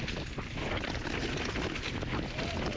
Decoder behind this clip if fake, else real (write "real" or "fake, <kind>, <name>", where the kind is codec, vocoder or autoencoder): real